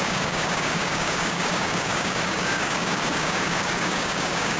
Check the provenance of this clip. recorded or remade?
remade